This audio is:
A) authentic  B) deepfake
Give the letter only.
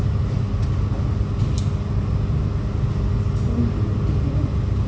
A